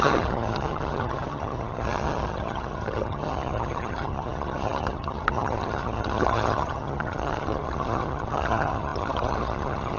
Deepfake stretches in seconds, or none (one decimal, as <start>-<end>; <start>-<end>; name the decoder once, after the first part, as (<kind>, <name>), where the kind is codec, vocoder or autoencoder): 0.0-10.0 (vocoder, HiFi-GAN)